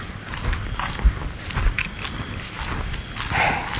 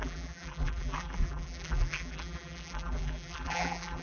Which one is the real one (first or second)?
first